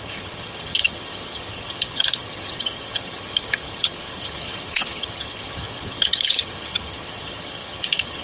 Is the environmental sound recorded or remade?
remade